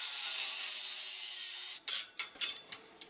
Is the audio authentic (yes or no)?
no